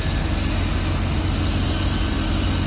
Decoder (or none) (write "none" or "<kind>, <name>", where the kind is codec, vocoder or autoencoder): none